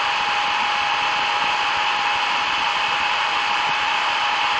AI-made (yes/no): yes